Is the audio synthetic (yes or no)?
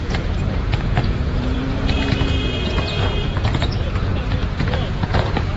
yes